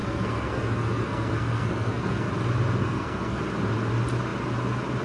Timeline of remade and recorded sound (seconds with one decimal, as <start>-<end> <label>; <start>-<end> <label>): 0.0-2.3 remade; 2.3-2.8 recorded; 2.8-3.4 remade; 3.4-5.0 recorded